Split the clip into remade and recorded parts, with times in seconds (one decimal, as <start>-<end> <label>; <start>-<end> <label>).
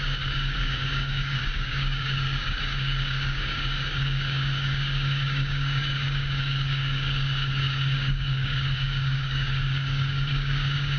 0.0-11.0 remade